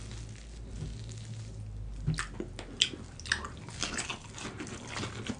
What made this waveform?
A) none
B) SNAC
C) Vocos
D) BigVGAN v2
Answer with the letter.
A